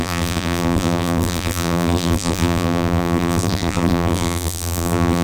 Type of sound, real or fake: fake